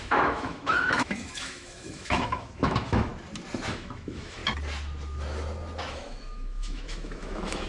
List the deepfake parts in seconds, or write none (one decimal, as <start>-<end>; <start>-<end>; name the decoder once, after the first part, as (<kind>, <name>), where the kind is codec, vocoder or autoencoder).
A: 0.0-3.1 (autoencoder, DAC-VAE); 3.7-4.4; 5.9-7.7